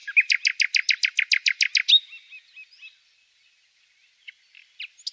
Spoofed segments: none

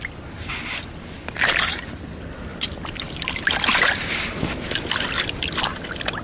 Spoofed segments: 2.5-4.3 (vocoder, BigVGAN v2)

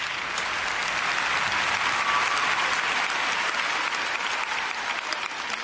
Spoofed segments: none

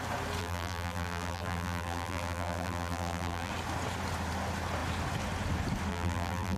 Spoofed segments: 0.4-3.5 (vocoder, BigVGAN v2); 5.9-6.6

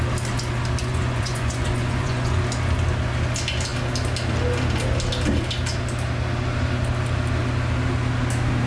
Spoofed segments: 0.8-2.4 (vocoder, Vocos)

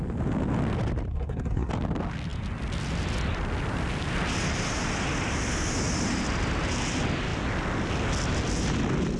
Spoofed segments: 1.1-1.7 (codec, SNAC)